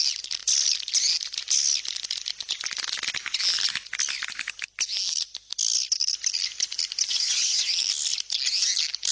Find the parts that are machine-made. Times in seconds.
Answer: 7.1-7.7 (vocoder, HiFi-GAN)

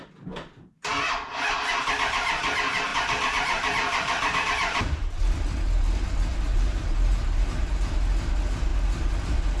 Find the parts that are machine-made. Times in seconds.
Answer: 2.9-5.2 (vocoder, BigVGAN v2); 6.3-7.7